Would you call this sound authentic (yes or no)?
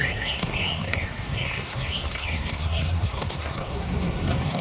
no